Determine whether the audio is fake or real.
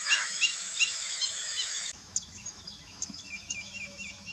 fake